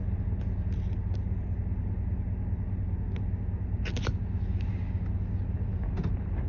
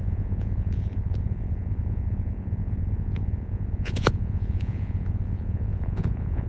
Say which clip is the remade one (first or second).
second